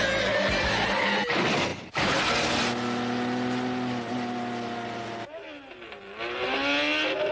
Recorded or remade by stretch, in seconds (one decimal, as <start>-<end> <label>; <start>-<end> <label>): 0.0-7.3 recorded